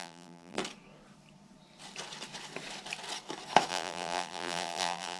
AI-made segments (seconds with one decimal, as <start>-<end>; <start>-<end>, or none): 0.0-0.6; 3.7-5.2